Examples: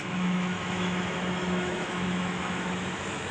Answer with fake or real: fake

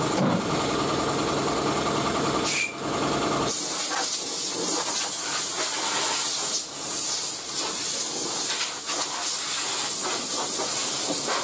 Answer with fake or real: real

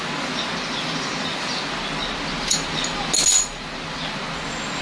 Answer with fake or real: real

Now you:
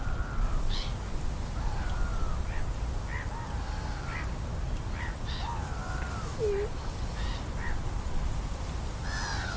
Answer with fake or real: real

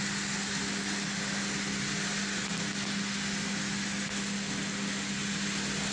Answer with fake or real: real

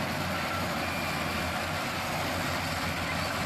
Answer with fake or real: real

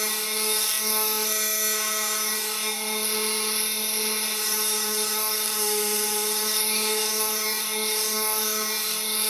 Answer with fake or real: fake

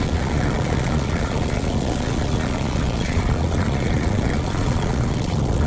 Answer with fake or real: fake